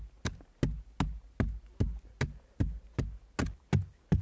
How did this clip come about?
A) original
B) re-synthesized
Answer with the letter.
A